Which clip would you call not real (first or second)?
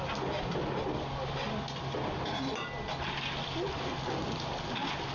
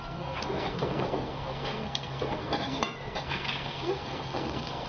second